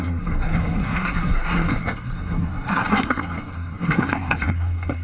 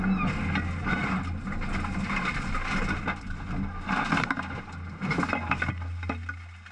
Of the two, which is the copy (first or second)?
first